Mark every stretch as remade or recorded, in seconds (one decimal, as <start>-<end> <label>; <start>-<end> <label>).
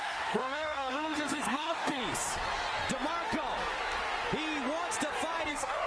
0.0-2.0 remade; 2.0-5.5 recorded; 5.5-5.9 remade